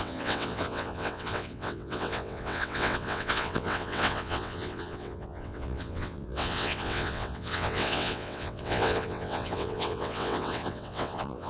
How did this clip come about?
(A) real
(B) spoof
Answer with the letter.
B